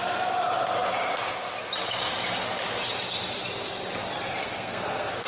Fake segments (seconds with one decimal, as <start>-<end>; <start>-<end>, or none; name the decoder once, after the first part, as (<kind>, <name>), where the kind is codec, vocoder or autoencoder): 4.4-5.3 (codec, SNAC)